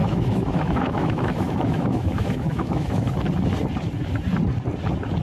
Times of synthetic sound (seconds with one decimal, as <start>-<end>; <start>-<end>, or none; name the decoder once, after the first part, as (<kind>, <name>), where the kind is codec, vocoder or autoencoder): 0.0-3.1 (autoencoder, DAC-VAE)